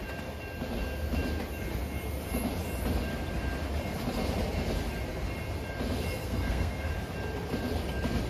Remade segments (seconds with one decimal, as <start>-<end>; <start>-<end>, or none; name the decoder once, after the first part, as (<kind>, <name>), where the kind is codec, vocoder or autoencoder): 6.2-6.9 (codec, SNAC)